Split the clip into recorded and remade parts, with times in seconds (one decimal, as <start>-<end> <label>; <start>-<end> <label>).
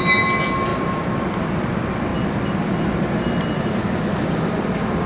0.0-5.1 recorded